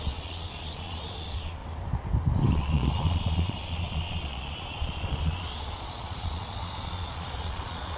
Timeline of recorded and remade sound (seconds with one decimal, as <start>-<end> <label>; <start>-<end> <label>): 0.0-1.6 remade; 1.6-2.5 recorded; 2.5-8.0 remade